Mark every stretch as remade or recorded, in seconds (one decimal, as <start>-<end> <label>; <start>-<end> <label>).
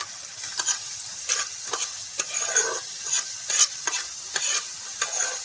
0.0-5.4 recorded